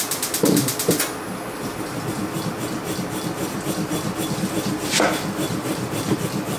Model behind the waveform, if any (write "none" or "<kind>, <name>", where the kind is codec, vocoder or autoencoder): none